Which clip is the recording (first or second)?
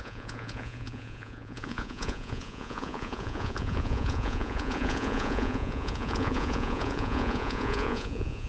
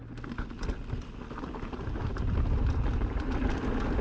second